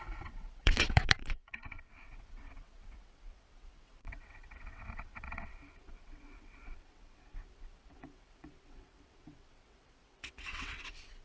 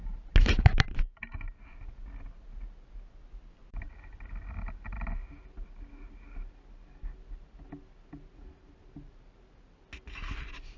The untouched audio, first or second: second